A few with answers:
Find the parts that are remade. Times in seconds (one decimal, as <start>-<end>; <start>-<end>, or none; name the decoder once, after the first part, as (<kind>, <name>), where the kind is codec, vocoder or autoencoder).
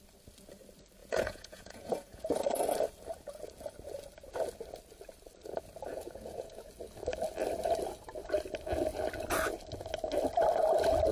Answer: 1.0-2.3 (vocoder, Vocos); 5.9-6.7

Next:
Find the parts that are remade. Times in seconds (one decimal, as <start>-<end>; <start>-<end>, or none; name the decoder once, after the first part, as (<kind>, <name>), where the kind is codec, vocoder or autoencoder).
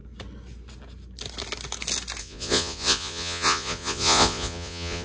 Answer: 2.2-5.0 (vocoder, Vocos)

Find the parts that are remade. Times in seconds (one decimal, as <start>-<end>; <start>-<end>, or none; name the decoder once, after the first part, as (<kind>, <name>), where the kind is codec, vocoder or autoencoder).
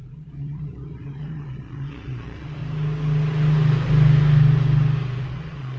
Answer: 0.0-2.6 (vocoder, Vocos); 5.2-5.8